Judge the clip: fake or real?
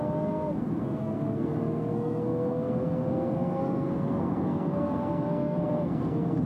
fake